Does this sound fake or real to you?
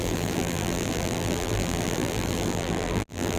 fake